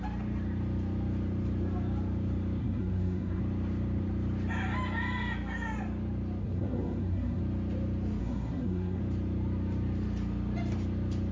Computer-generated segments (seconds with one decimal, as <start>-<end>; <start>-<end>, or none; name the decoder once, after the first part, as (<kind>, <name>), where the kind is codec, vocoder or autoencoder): 2.6-3.4 (codec, SNAC); 6.4-7.4; 8.2-9.0